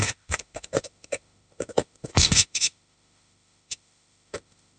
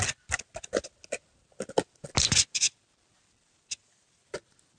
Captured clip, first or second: second